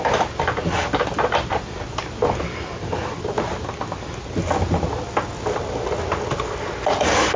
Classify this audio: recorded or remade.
recorded